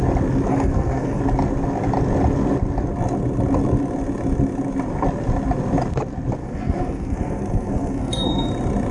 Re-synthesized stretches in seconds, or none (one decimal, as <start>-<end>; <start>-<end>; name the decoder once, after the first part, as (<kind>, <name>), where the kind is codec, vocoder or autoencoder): 0.5-1.2 (codec, SNAC); 6.4-8.5